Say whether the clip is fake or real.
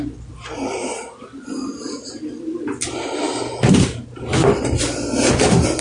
real